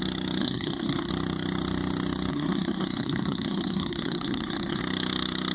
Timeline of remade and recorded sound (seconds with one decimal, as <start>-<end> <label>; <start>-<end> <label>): 0.0-0.4 recorded; 0.4-1.1 remade; 1.1-2.3 recorded; 2.3-4.8 remade; 4.8-5.5 recorded